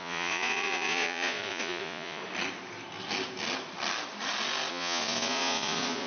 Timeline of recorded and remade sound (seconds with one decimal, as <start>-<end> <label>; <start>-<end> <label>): 0.0-2.2 remade; 2.2-4.7 recorded; 4.7-6.1 remade